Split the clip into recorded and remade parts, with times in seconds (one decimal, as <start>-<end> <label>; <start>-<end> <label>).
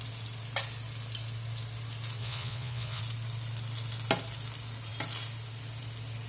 0.0-2.2 recorded; 2.2-3.0 remade; 3.0-6.3 recorded